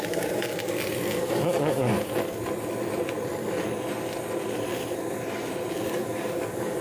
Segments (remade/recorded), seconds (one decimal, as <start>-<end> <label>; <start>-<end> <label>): 0.0-0.6 remade; 0.6-1.2 recorded; 1.2-1.9 remade; 1.9-5.9 recorded; 5.9-6.8 remade